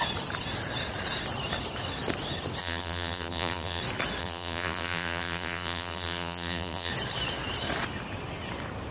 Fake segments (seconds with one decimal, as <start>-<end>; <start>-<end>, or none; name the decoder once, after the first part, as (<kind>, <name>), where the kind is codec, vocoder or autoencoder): 2.6-3.8 (vocoder, BigVGAN v2); 4.2-6.9